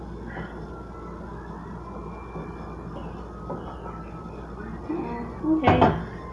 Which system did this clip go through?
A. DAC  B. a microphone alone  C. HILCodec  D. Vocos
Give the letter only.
B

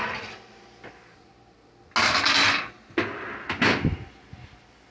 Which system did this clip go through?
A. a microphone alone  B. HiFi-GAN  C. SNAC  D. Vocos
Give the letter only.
A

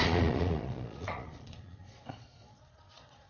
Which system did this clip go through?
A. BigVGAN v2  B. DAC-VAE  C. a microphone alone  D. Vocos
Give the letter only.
D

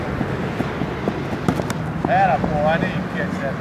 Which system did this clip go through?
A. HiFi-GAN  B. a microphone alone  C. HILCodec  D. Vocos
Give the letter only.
B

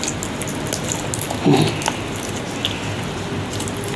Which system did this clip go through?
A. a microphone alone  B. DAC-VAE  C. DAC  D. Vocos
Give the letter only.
A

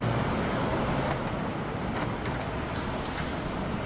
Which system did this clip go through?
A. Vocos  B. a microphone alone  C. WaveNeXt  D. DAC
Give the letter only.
B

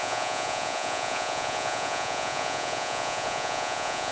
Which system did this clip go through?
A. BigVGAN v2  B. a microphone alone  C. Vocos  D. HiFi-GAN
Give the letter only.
C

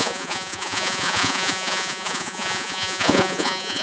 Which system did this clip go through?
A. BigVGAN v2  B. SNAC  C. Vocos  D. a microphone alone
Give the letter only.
C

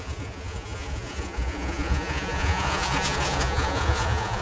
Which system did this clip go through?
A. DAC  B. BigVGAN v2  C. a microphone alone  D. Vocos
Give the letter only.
D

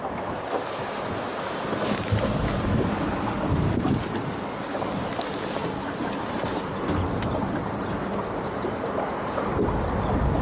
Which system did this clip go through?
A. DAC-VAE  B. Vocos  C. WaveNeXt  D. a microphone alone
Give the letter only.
D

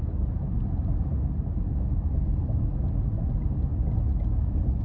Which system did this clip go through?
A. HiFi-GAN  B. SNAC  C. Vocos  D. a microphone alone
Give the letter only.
D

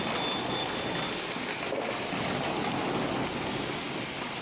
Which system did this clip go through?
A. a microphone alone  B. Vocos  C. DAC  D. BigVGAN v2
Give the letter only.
A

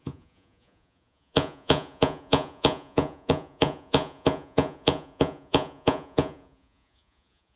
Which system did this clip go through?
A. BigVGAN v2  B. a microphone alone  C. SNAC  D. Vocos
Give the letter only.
D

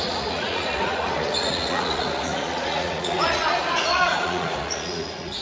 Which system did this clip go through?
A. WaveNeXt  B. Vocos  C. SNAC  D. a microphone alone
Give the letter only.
B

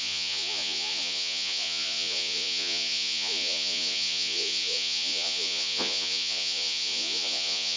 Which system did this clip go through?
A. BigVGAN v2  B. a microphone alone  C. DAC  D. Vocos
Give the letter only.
D